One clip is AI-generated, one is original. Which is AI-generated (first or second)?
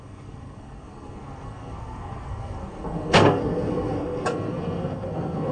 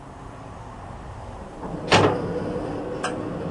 first